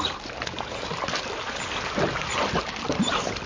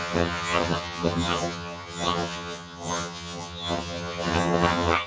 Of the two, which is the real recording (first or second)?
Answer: first